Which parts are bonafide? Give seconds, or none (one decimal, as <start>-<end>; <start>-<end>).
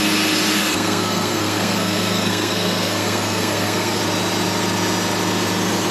0.0-0.6; 4.0-5.9